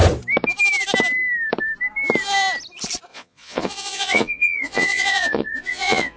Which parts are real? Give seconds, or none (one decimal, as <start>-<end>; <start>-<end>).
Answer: 0.0-3.1